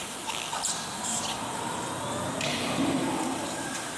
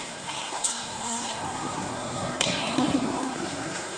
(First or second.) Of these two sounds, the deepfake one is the second